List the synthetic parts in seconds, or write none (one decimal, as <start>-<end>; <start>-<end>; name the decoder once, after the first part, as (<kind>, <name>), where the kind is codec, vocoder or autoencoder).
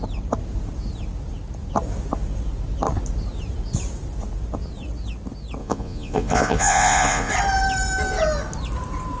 5.6-7.3 (vocoder, Vocos)